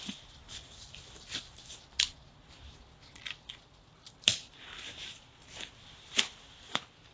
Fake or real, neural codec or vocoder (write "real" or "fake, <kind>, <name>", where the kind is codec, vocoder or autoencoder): real